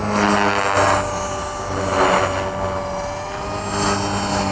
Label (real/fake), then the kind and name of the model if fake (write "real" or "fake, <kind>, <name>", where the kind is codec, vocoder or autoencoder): real